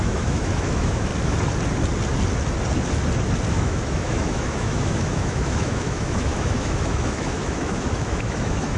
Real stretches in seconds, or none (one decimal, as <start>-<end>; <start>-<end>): 1.1-3.5